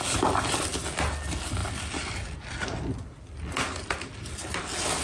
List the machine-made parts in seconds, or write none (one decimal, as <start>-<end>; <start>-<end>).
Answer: 1.6-4.6